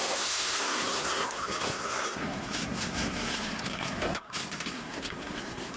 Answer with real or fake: fake